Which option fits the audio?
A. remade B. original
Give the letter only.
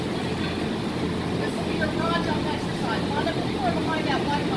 B